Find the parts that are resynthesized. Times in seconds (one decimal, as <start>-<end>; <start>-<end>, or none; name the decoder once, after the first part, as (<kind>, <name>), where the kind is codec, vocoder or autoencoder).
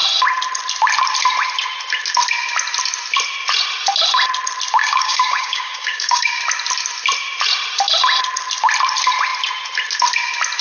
4.8-6.4 (codec, DAC)